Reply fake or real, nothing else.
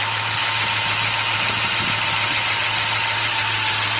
real